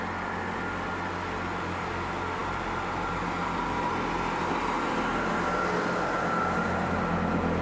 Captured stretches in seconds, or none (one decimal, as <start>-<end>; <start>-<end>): 0.0-2.4; 3.1-7.6